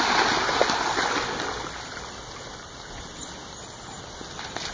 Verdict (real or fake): real